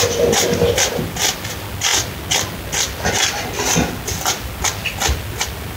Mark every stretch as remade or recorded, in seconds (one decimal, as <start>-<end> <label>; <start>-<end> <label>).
0.0-5.8 recorded

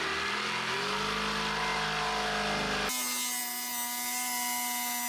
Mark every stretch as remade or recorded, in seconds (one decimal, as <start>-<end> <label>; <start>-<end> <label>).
0.0-5.1 recorded

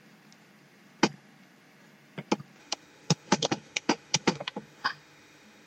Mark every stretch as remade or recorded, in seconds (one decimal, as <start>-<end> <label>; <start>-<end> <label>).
0.0-2.6 recorded; 2.6-5.7 remade

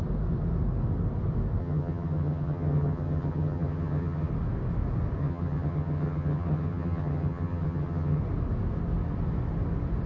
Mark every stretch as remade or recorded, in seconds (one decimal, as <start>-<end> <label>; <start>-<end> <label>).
0.0-1.6 recorded; 1.6-4.3 remade; 4.3-5.2 recorded; 5.2-8.2 remade; 8.2-10.1 recorded

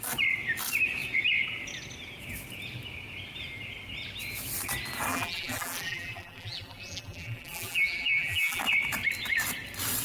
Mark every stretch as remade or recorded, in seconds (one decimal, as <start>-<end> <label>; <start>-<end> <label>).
0.0-5.1 recorded; 5.1-8.6 remade; 8.6-10.0 recorded

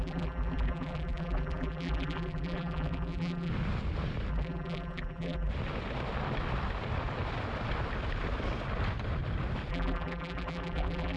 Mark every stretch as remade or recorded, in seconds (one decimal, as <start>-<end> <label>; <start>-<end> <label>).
0.0-3.5 remade; 3.5-4.3 recorded; 4.3-5.5 remade; 5.5-9.7 recorded; 9.7-11.2 remade

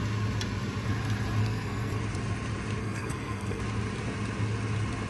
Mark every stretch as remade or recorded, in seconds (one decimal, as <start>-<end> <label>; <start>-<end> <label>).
0.0-1.4 recorded; 1.4-2.0 remade; 2.0-2.8 recorded; 2.8-3.6 remade; 3.6-5.1 recorded

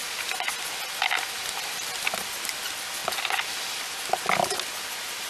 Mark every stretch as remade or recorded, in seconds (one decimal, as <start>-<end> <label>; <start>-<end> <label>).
0.0-5.3 recorded